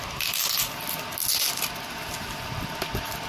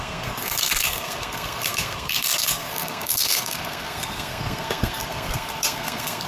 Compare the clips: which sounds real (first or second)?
first